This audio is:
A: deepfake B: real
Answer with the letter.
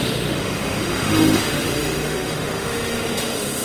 A